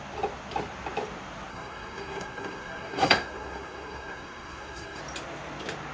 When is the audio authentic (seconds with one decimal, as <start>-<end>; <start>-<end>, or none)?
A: 0.0-1.5; 5.0-5.9